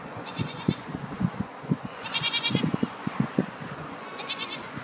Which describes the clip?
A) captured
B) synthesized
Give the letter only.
B